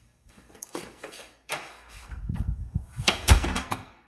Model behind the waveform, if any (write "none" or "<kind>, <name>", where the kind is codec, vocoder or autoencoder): codec, SNAC